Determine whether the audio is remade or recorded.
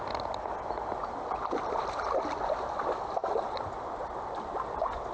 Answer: recorded